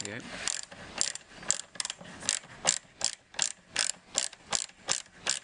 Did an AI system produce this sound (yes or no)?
no